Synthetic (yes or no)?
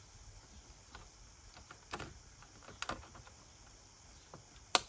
no